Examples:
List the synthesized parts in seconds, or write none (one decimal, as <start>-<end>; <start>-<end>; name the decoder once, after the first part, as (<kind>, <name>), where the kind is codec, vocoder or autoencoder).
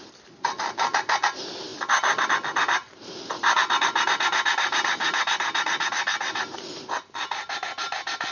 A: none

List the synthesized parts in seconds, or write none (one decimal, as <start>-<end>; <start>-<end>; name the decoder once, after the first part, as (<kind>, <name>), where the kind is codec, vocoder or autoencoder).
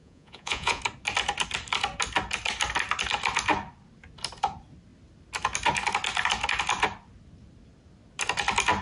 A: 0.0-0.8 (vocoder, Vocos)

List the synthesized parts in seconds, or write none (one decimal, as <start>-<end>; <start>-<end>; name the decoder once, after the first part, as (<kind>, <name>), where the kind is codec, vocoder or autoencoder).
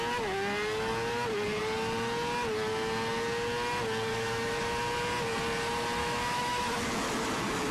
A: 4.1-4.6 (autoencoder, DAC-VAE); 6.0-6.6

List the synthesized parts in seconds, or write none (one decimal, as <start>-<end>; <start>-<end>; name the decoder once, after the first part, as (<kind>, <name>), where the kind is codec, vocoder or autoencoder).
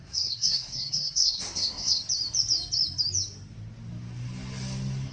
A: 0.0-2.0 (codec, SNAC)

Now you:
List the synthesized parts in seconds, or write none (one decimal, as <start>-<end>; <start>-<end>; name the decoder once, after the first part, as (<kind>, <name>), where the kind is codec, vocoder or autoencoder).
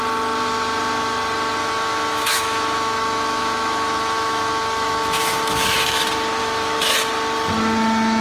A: 1.6-6.0 (autoencoder, DAC-VAE); 6.4-7.0